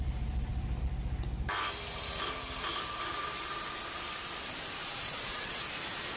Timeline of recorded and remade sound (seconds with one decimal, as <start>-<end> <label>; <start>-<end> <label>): 0.0-4.8 recorded; 4.8-5.6 remade; 5.6-6.2 recorded